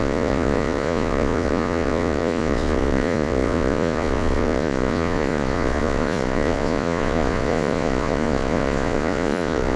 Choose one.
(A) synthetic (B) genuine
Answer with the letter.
A